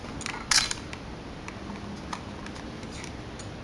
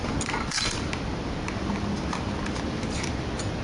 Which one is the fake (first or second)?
second